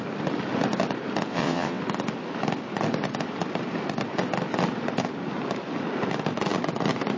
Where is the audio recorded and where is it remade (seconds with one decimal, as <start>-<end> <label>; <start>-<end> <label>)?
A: 0.0-1.3 recorded; 1.3-1.8 remade; 1.8-7.2 recorded